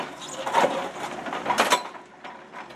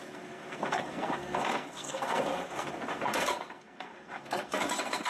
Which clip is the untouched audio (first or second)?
first